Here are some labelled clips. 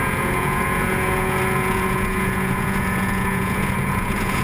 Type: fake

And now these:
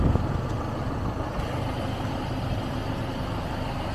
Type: real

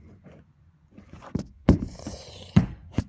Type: fake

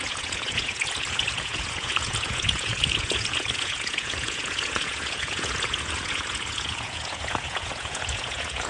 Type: fake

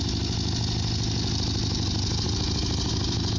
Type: real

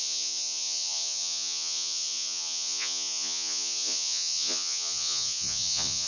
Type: fake